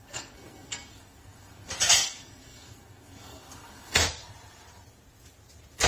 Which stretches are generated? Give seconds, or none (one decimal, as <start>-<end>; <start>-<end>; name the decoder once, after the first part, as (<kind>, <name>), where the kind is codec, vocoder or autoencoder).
0.0-4.0 (codec, SNAC)